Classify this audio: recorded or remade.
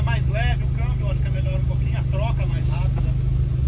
recorded